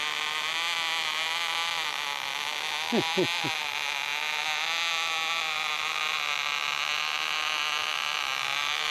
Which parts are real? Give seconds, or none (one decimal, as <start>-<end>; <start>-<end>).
0.0-8.9